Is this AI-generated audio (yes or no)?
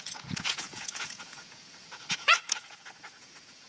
yes